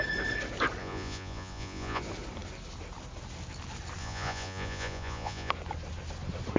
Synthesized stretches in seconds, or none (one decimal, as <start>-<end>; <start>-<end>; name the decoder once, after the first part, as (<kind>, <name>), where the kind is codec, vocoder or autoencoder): 0.8-2.0 (vocoder, Vocos); 4.0-5.5